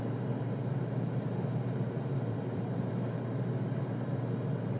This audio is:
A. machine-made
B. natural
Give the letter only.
A